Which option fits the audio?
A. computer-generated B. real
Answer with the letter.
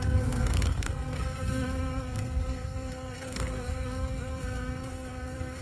A